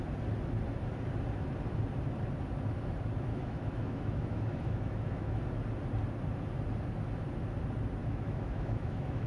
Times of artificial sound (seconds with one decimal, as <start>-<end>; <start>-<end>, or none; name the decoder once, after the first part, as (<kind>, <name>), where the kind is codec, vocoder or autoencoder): 3.3-5.4 (autoencoder, DAC-VAE); 8.0-9.3